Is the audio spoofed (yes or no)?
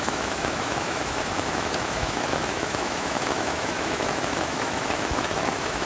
yes